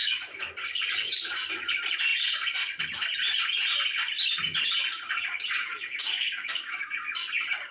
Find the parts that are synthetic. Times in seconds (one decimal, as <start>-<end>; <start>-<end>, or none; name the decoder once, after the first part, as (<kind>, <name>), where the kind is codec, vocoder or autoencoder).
0.0-0.5 (autoencoder, DAC-VAE); 5.6-6.9